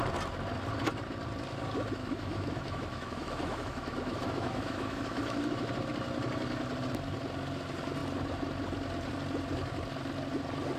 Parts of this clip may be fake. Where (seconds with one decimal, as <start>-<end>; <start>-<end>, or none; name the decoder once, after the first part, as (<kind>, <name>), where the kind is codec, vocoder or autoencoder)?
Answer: 2.0-5.7 (autoencoder, DAC-VAE)